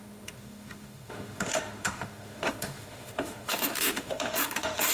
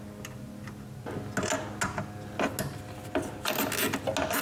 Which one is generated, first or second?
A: first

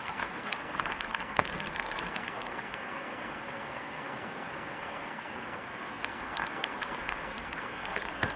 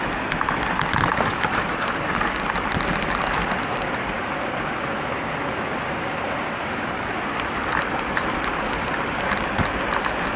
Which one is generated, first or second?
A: first